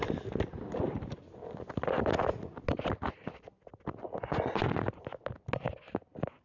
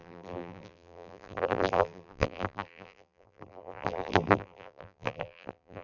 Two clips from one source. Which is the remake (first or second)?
second